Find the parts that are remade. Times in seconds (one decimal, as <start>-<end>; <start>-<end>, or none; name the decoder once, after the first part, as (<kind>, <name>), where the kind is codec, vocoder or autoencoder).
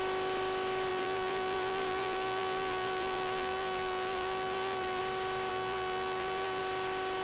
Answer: 0.9-5.0 (vocoder, BigVGAN v2); 5.5-6.6